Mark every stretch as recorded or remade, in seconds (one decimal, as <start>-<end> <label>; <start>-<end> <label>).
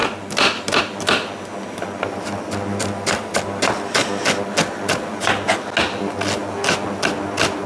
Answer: 0.0-7.7 recorded